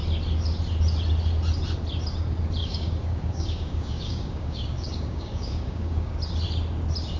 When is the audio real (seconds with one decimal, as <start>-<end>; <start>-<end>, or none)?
0.0-2.6; 6.2-7.2